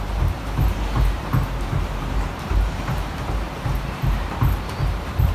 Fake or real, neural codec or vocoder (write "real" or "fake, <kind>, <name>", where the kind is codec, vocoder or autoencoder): fake, vocoder, BigVGAN v2